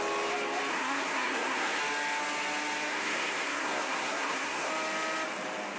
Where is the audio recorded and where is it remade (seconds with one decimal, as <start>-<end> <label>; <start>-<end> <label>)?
0.0-0.7 recorded; 0.7-1.8 remade; 1.8-2.9 recorded; 2.9-4.7 remade; 4.7-5.8 recorded